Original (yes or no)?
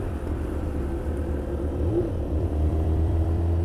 no